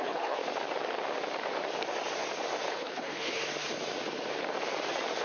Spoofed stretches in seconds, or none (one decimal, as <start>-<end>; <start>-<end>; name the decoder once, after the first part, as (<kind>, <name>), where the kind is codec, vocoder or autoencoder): 0.0-0.4 (codec, HILCodec); 2.7-3.4